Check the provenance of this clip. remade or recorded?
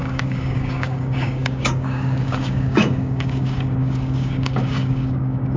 remade